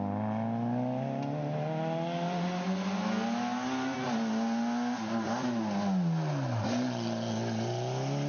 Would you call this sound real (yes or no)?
yes